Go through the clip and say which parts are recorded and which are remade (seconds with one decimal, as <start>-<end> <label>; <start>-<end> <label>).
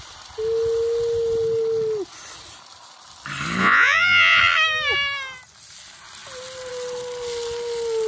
0.0-3.6 recorded; 3.6-4.4 remade; 4.4-8.1 recorded